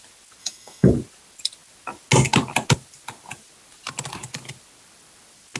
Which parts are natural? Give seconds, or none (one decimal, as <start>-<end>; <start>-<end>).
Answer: 0.0-0.4; 0.9-5.6